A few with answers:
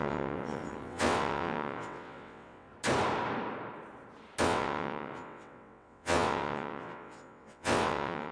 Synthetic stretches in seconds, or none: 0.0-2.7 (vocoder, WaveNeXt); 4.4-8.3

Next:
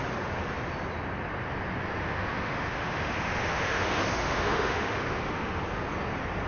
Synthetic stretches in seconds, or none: 2.0-5.6 (autoencoder, DAC-VAE)

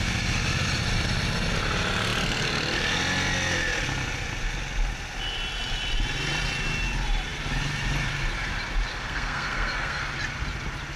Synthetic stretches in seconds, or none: 8.9-10.0 (codec, SNAC)

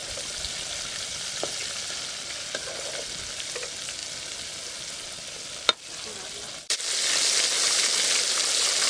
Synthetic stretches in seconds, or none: none